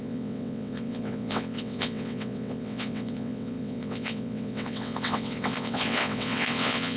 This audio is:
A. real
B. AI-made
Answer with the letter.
B